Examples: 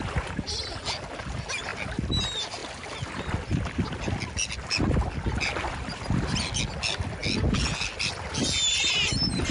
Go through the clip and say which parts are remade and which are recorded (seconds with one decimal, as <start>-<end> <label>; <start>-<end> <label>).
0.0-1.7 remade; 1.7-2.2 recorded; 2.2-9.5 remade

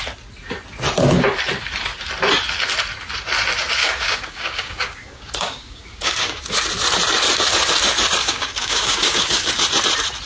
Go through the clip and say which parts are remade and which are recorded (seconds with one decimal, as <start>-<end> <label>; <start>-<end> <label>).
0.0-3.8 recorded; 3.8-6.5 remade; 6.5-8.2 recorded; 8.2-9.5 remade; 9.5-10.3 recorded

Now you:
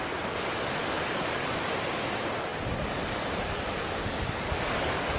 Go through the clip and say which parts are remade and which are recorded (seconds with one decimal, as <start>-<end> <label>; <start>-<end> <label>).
0.0-0.8 recorded; 0.8-1.6 remade; 1.6-4.0 recorded; 4.0-5.2 remade

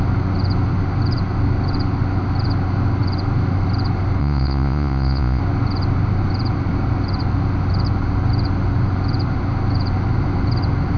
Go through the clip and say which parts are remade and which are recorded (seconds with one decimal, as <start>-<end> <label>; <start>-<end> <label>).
0.0-4.2 recorded; 4.2-5.4 remade; 5.4-11.0 recorded

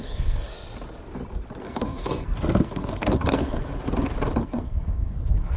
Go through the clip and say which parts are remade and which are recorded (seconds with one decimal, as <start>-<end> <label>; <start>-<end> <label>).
0.0-0.5 remade; 0.5-1.6 recorded; 1.6-3.7 remade; 3.7-4.4 recorded; 4.4-5.6 remade

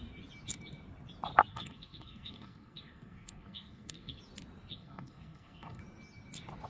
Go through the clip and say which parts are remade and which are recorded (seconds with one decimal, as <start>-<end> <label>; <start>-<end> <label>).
0.0-1.5 recorded; 1.5-4.2 remade; 4.2-4.7 recorded; 4.7-5.8 remade; 5.8-6.7 recorded